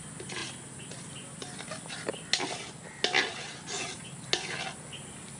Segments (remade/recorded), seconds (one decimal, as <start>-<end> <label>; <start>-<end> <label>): 0.0-5.4 recorded